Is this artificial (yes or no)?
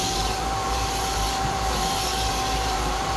yes